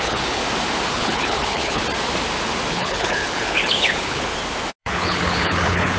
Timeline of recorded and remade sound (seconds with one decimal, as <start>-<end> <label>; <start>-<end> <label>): 0.0-0.4 remade; 0.4-0.9 recorded; 0.9-1.8 remade; 1.8-2.7 recorded; 2.7-4.3 remade; 4.3-4.8 recorded; 4.8-6.0 remade

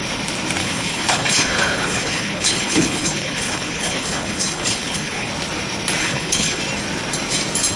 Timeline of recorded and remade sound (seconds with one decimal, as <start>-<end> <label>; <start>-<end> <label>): 0.0-0.6 recorded; 0.6-5.3 remade; 5.3-6.0 recorded; 6.0-6.6 remade; 6.6-7.8 recorded

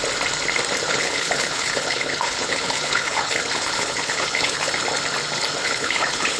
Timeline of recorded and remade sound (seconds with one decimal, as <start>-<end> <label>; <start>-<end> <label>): 0.0-0.9 recorded; 0.9-4.7 remade; 4.7-5.6 recorded; 5.6-6.4 remade

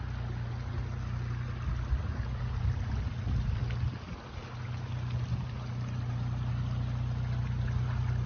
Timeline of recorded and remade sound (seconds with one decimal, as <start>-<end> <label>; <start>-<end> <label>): 0.0-8.3 recorded

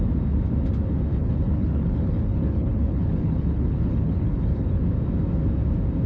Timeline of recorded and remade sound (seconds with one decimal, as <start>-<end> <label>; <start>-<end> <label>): 0.0-1.1 recorded; 1.1-4.8 remade; 4.8-6.1 recorded